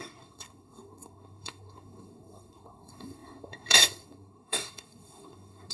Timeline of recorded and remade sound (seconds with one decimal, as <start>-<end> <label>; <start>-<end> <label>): 0.0-5.7 remade